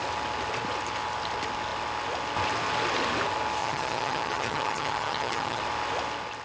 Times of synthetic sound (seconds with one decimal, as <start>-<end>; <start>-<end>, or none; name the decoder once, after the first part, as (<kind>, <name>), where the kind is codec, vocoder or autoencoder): 3.6-5.6 (vocoder, HiFi-GAN)